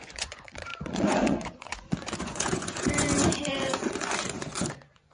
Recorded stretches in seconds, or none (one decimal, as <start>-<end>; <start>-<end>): none